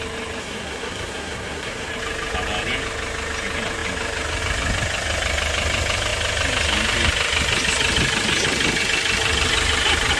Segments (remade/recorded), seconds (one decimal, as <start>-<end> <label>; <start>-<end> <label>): 0.0-0.4 recorded; 0.4-1.9 remade; 1.9-10.2 recorded